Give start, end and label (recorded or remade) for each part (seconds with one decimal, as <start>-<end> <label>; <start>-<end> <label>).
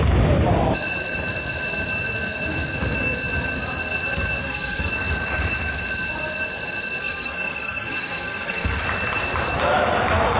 0.0-4.4 recorded; 4.4-4.9 remade; 4.9-7.0 recorded; 7.0-8.8 remade; 8.8-10.4 recorded